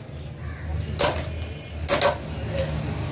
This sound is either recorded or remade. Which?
recorded